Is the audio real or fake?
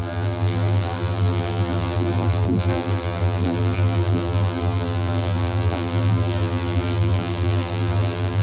fake